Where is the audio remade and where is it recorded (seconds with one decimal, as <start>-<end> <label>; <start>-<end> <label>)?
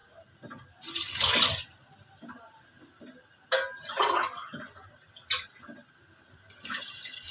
0.0-7.3 recorded